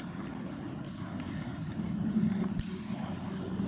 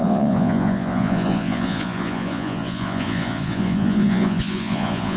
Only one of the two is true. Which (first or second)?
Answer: first